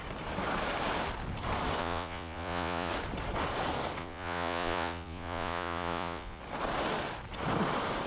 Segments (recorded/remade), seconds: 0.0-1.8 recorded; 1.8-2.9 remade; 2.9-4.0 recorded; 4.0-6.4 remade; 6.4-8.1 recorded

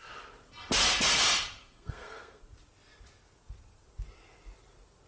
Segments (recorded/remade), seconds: 0.0-1.6 recorded; 1.6-2.4 remade; 2.4-5.1 recorded

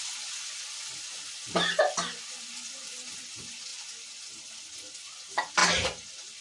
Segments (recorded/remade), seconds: 0.0-6.4 recorded

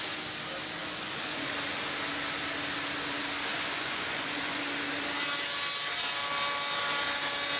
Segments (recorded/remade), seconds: 0.0-0.8 recorded; 0.8-1.5 remade; 1.5-3.5 recorded; 3.5-4.6 remade; 4.6-7.6 recorded

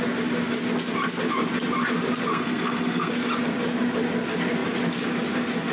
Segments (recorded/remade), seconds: 0.0-2.3 recorded; 2.3-3.1 remade; 3.1-5.7 recorded